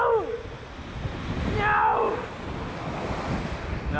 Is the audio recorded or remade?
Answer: recorded